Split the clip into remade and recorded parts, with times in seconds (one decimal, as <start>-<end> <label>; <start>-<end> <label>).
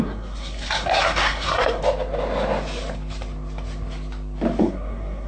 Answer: 0.0-1.8 remade; 1.8-4.6 recorded; 4.6-5.3 remade